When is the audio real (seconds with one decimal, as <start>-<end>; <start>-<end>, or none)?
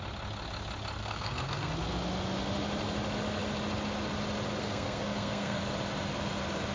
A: 0.0-1.0; 1.7-4.6; 5.6-6.7